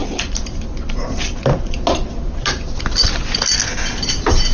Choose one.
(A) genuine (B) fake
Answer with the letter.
A